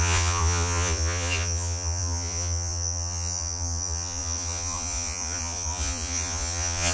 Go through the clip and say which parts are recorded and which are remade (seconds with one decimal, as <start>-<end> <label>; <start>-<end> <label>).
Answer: 0.0-6.9 remade